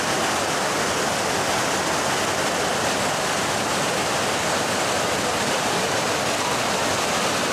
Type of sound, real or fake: real